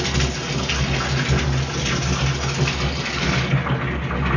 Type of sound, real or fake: real